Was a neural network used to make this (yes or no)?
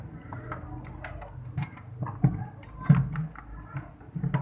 no